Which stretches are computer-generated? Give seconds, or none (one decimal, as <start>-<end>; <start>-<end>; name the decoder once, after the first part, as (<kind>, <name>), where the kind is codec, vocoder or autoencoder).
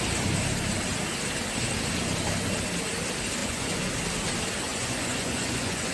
3.4-3.9 (vocoder, Vocos); 4.7-5.9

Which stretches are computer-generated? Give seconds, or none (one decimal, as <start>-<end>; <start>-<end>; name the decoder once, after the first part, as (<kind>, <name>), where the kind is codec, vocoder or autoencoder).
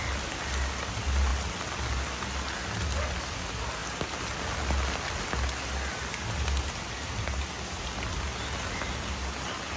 none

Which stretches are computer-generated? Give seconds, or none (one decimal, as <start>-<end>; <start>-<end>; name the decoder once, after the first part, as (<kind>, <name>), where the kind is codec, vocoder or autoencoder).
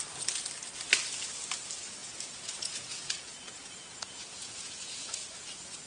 2.0-5.5 (vocoder, Vocos)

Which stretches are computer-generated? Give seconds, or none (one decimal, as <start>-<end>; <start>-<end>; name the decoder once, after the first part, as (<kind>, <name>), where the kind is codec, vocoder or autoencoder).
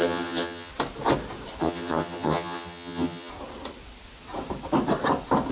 0.0-0.7 (vocoder, HiFi-GAN); 1.6-3.3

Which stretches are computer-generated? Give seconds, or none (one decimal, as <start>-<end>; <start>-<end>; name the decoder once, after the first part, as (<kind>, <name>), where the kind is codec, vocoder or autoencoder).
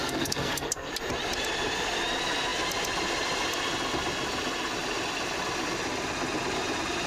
0.0-0.9 (codec, SNAC)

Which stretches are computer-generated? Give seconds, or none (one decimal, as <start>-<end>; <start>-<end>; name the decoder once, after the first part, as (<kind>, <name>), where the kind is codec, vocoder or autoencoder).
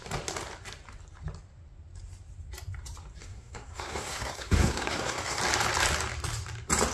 3.2-5.4 (codec, SNAC)